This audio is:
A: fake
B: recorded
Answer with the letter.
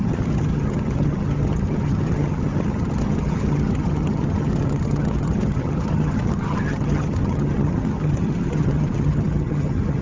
A